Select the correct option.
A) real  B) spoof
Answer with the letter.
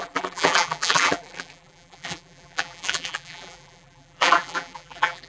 B